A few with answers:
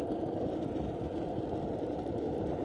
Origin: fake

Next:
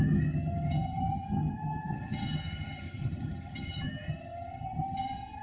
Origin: fake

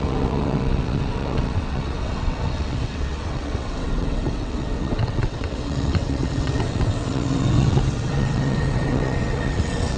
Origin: fake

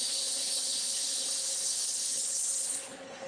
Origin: fake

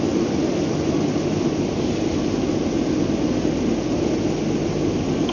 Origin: real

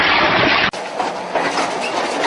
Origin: real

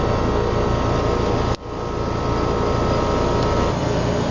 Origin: real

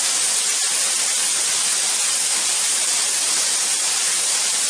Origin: real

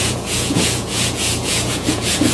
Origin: fake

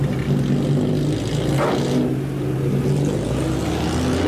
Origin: real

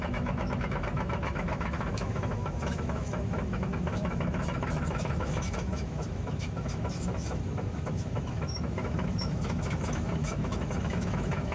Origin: fake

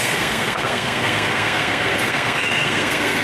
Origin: fake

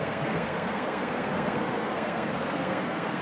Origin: fake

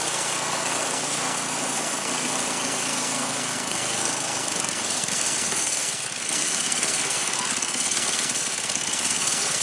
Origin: fake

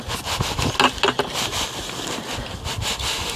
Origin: real